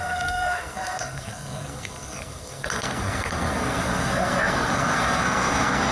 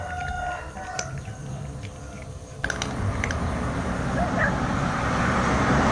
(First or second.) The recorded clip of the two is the second